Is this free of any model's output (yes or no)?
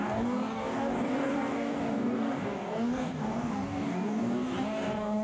no